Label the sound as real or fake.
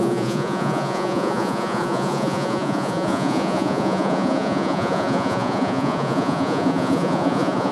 fake